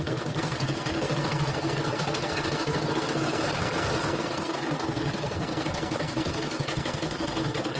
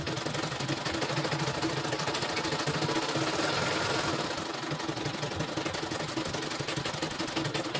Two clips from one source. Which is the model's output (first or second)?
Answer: first